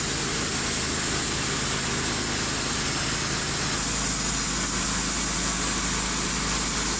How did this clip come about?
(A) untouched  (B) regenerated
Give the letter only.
A